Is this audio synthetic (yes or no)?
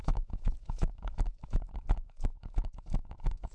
yes